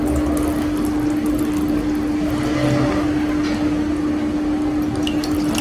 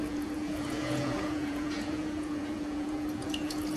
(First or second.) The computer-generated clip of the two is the second